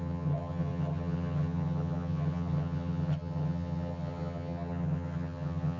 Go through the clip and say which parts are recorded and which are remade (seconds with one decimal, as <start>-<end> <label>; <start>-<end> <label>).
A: 0.0-5.8 remade